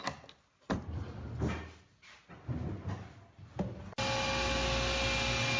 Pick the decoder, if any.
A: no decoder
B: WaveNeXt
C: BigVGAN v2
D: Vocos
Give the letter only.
A